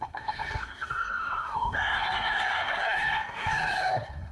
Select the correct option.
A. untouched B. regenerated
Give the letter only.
B